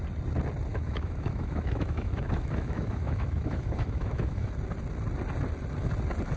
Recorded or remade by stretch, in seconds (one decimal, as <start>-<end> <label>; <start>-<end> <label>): 0.0-0.7 recorded; 0.7-4.5 remade; 4.5-6.4 recorded